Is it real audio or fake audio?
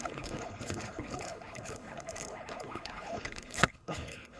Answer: fake